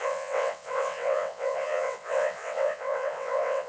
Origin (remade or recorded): remade